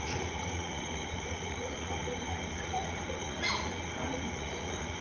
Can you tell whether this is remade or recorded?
remade